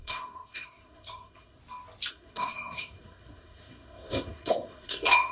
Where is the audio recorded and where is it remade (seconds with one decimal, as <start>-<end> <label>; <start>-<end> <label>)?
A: 0.0-1.6 remade; 1.6-2.1 recorded; 2.1-5.3 remade